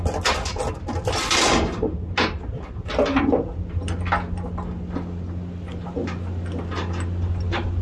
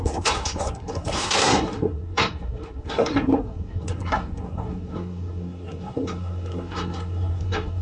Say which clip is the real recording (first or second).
first